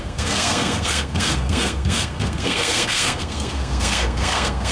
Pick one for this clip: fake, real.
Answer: fake